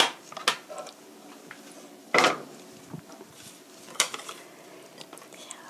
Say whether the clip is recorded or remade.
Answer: recorded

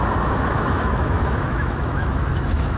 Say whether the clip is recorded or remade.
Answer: remade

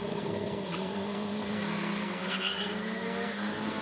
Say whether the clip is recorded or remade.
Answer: remade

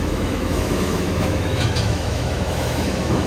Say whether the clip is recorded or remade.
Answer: remade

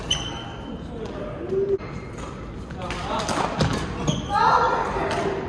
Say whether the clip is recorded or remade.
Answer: recorded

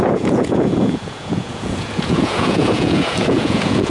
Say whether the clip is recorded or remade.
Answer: remade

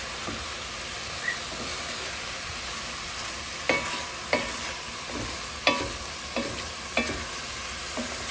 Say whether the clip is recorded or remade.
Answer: recorded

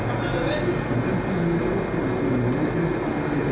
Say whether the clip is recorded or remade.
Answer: recorded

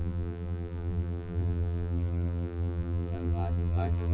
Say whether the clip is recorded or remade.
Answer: remade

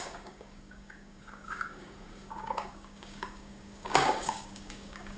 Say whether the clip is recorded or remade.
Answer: remade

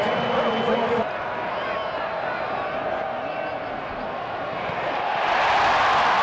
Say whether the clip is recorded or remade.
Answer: recorded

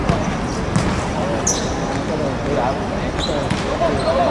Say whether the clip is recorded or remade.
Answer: recorded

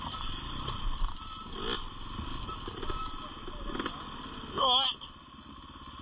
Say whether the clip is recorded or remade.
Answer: recorded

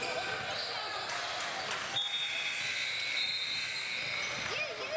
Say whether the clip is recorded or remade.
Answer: recorded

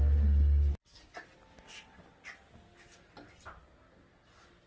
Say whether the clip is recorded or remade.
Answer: recorded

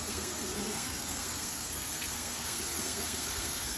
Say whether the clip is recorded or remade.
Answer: remade